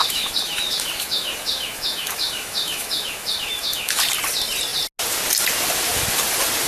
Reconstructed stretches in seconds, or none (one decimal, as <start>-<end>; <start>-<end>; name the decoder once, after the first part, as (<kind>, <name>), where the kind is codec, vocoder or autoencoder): 0.0-4.0 (autoencoder, DAC-VAE)